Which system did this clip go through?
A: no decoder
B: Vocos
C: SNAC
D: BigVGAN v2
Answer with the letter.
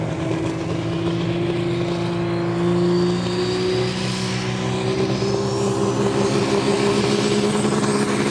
A